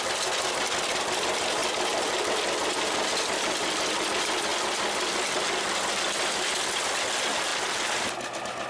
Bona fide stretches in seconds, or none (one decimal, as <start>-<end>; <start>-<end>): 0.0-8.7